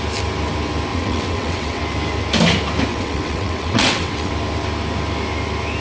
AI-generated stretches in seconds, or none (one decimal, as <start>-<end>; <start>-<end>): 0.9-1.8; 2.9-4.3